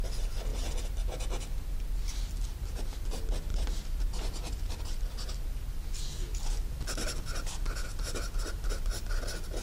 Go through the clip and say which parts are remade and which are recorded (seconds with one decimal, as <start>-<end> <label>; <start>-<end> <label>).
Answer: 0.0-3.5 recorded; 3.5-4.8 remade; 4.8-7.9 recorded; 7.9-8.7 remade; 8.7-9.6 recorded

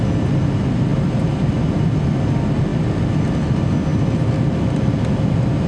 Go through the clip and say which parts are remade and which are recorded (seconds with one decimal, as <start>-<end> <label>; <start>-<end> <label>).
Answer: 0.0-0.9 recorded; 0.9-2.2 remade; 2.2-3.9 recorded; 3.9-4.6 remade; 4.6-5.7 recorded

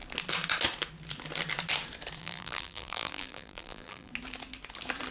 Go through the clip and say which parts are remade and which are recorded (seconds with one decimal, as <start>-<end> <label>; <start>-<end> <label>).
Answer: 0.0-2.2 recorded; 2.2-4.1 remade; 4.1-5.1 recorded

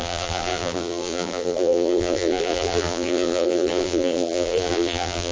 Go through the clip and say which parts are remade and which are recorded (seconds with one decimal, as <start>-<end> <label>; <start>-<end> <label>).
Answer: 0.0-5.3 remade

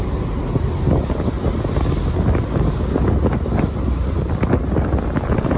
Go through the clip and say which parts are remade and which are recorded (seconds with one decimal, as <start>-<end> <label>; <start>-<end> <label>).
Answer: 0.0-3.4 recorded; 3.4-5.6 remade